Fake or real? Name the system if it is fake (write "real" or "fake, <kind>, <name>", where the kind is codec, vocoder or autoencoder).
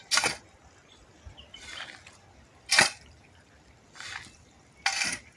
real